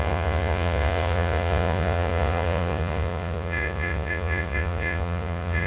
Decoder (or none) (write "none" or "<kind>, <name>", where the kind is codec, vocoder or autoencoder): vocoder, Vocos